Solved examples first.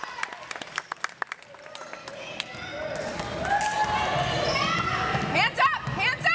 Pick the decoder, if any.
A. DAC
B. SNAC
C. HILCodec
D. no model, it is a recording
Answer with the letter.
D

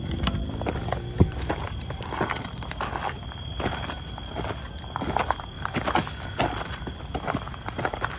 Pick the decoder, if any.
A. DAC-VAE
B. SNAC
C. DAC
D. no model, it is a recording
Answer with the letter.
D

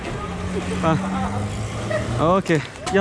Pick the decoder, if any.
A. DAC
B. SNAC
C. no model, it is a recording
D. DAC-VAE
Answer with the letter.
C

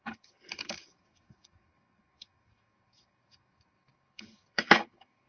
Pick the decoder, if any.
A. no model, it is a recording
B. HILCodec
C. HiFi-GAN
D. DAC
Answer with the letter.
D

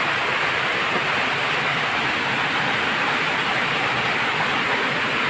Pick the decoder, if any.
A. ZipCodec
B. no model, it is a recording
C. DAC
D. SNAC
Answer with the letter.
B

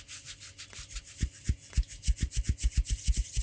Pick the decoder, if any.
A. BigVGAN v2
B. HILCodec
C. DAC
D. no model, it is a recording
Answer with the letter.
D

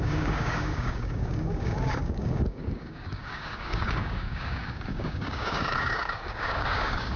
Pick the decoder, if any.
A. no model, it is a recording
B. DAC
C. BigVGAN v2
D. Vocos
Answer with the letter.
B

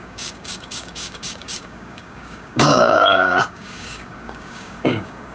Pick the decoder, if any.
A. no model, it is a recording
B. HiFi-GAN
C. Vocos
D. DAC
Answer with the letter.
D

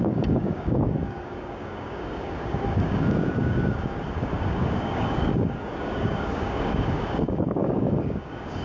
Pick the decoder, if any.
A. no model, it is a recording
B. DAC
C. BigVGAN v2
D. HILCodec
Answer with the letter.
B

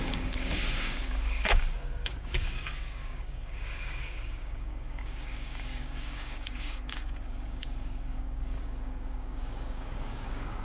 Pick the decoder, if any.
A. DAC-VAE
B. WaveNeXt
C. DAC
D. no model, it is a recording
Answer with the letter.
C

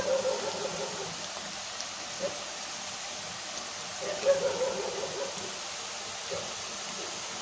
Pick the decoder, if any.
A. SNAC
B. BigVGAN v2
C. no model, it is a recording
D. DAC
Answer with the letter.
C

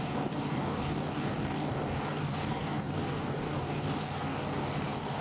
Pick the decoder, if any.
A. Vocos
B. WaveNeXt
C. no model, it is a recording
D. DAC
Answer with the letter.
D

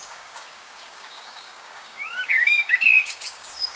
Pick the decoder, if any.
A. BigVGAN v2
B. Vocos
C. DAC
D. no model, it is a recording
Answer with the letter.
C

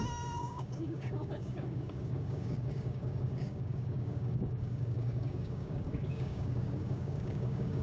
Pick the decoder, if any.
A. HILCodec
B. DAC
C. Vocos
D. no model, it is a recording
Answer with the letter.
B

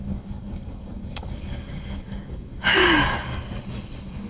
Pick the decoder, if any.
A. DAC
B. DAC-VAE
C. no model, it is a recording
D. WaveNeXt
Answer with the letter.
A